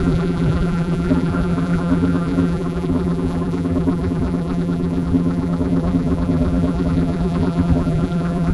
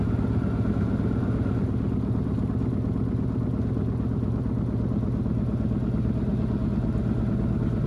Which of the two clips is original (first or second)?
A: second